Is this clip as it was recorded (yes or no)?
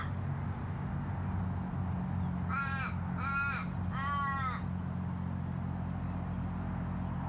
yes